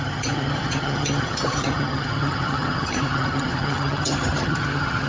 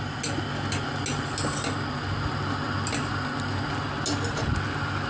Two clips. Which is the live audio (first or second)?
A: second